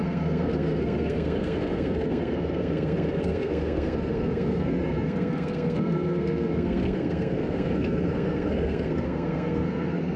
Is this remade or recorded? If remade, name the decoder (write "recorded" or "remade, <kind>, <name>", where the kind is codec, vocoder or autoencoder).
remade, codec, SNAC